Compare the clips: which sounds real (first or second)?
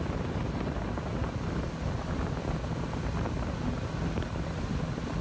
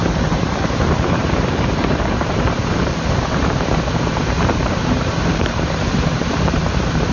first